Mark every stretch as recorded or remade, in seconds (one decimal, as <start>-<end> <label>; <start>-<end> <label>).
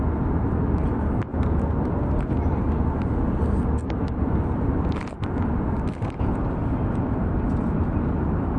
0.0-8.6 recorded